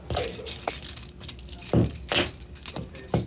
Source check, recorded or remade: recorded